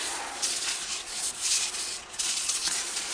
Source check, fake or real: fake